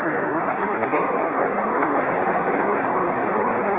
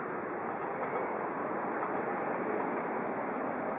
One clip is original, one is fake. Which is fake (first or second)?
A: first